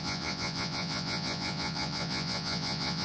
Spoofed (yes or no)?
yes